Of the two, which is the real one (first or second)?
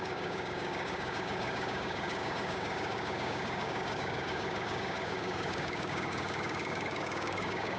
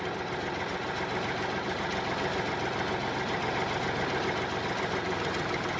second